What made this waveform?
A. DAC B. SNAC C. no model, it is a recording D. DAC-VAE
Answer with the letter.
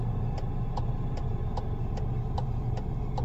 C